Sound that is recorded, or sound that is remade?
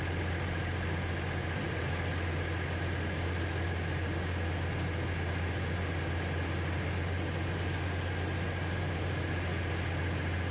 recorded